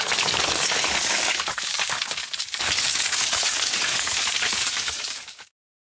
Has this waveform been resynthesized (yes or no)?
yes